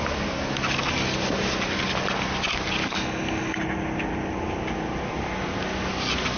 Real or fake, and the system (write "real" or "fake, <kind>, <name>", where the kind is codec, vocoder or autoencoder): real